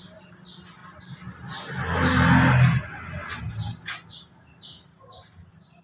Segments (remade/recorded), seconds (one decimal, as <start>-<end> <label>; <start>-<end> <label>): 0.0-5.8 recorded